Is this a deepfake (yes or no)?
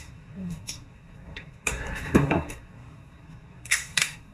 yes